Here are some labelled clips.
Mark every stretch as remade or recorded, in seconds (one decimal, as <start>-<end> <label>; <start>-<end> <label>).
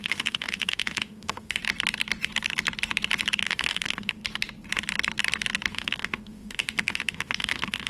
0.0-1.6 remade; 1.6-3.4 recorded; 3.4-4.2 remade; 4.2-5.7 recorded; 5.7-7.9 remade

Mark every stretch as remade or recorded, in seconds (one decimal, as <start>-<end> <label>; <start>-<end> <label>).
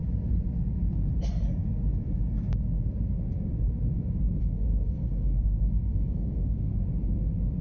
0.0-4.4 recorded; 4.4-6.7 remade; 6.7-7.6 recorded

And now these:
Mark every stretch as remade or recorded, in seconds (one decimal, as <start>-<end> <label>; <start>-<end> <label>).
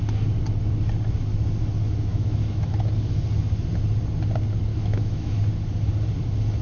0.0-2.1 recorded; 2.1-2.8 remade; 2.8-4.7 recorded; 4.7-5.4 remade; 5.4-6.6 recorded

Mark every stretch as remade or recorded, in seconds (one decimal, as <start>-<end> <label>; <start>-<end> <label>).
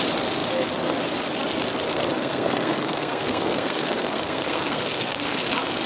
0.0-1.9 recorded; 1.9-5.4 remade; 5.4-5.9 recorded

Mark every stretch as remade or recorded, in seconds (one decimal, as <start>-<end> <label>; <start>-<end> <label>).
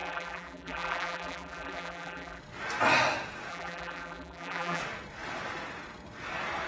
0.0-2.4 remade; 2.4-3.5 recorded; 3.5-4.8 remade; 4.8-6.7 recorded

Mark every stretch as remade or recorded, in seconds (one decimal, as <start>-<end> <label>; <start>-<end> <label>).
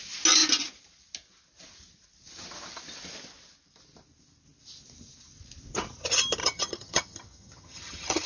0.0-6.4 recorded; 6.4-8.3 remade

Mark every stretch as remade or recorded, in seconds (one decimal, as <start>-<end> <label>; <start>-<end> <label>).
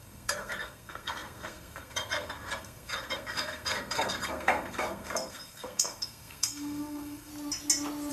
0.0-7.3 remade; 7.3-8.1 recorded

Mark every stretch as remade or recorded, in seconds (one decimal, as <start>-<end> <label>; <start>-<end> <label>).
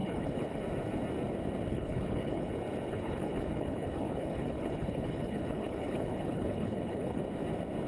0.0-0.6 remade; 0.6-1.7 recorded; 1.7-2.5 remade; 2.5-2.9 recorded; 2.9-7.2 remade; 7.2-7.9 recorded